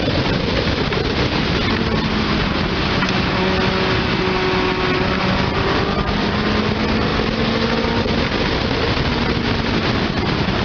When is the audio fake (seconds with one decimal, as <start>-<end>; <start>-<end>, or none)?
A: none